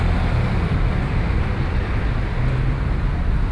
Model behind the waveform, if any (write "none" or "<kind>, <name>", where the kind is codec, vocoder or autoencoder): none